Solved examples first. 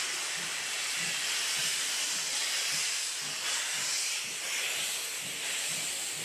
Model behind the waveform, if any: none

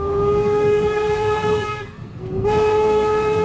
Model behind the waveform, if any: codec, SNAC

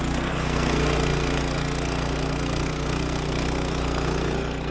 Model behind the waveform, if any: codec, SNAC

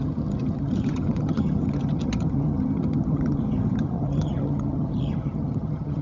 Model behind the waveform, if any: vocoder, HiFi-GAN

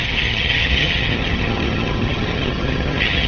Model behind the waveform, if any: vocoder, HiFi-GAN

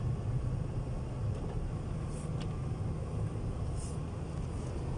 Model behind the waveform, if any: none